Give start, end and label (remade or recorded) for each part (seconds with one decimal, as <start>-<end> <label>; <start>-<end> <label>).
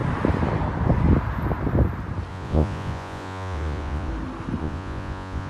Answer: 0.0-2.3 recorded; 2.3-4.1 remade; 4.1-4.6 recorded; 4.6-5.5 remade